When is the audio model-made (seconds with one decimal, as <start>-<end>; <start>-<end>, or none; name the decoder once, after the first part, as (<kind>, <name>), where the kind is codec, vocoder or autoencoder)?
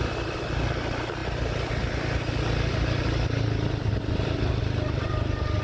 none